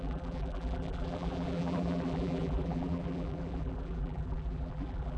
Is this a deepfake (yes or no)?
yes